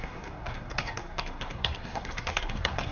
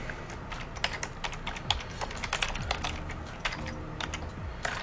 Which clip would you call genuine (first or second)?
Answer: second